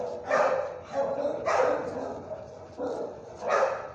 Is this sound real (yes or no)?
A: yes